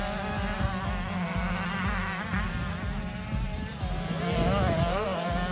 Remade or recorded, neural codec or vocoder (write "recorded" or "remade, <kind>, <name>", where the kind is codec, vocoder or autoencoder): recorded